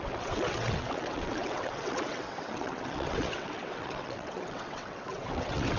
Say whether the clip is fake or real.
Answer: fake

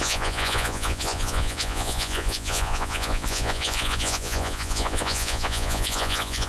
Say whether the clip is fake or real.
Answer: fake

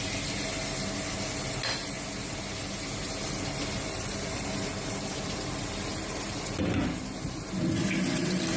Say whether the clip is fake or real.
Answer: real